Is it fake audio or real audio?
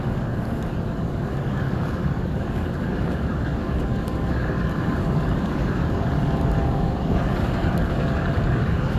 fake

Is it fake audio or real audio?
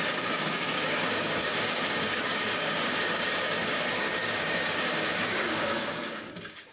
fake